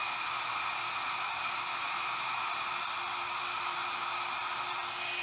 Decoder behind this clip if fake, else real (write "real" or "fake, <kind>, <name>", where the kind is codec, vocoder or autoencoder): real